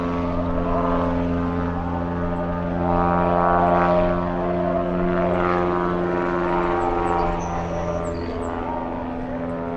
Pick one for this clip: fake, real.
real